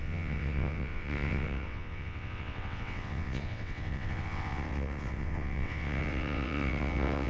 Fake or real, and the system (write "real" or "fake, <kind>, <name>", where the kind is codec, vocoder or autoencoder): fake, vocoder, WaveNeXt